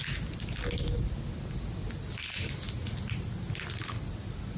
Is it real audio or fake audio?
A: real